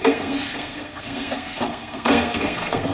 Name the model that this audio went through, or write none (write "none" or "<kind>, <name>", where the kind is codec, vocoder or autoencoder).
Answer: codec, SNAC